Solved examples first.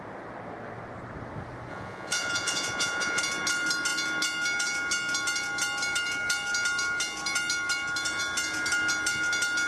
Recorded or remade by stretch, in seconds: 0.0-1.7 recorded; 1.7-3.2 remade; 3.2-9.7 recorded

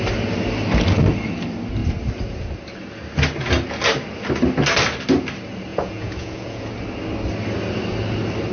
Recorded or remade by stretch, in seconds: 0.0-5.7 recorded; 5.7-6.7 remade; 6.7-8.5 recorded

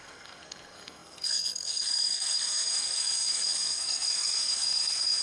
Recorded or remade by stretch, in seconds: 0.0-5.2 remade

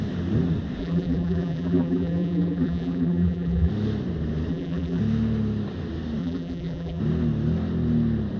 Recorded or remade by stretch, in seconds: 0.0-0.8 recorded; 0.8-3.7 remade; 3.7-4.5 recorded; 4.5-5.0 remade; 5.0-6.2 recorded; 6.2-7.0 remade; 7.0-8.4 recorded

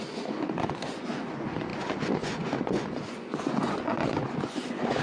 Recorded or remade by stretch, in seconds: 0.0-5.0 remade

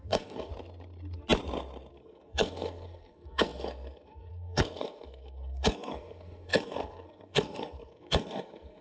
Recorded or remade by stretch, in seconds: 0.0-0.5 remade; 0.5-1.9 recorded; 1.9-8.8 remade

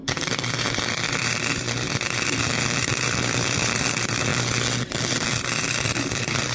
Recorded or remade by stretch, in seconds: 0.0-6.5 remade

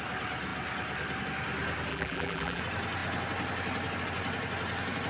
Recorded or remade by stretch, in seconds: 0.0-1.9 recorded; 1.9-2.6 remade; 2.6-5.1 recorded